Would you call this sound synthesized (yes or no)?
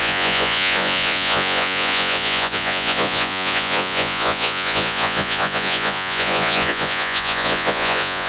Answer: yes